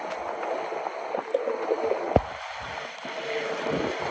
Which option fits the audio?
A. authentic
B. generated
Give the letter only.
A